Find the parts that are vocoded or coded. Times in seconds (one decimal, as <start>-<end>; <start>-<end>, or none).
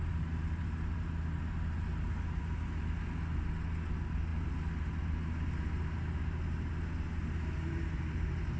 none